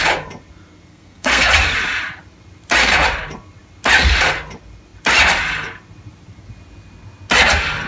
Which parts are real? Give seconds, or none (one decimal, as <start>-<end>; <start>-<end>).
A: 0.0-0.9; 1.5-7.9

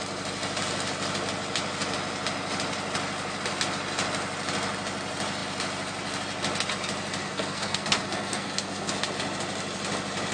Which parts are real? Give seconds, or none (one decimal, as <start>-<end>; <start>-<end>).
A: 0.0-7.2; 8.9-10.3

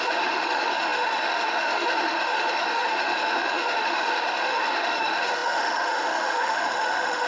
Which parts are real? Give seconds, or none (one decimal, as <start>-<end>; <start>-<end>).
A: none

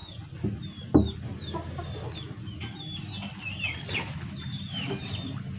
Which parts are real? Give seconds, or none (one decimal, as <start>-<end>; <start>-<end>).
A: 0.0-5.6

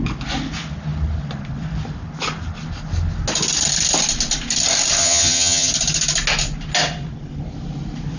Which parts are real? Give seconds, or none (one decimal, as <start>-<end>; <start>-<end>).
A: 0.0-5.0; 5.7-8.2

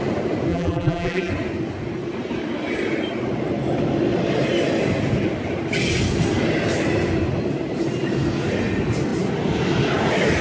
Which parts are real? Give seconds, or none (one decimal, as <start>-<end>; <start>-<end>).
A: 0.0-0.5; 1.3-10.4

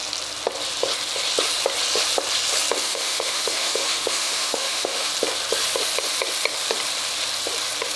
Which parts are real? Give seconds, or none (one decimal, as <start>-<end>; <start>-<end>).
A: 0.0-2.8; 5.1-8.0